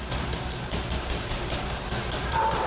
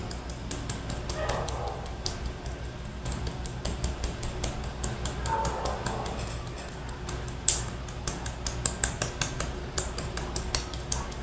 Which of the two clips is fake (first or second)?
first